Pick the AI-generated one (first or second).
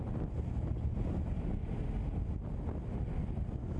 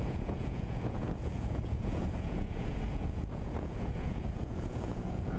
second